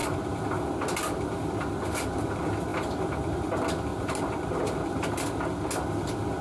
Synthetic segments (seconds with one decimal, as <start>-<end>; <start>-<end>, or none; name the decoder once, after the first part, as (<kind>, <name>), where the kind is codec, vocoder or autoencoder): none